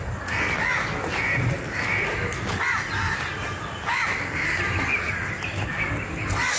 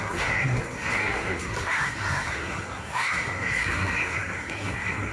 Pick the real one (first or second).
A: first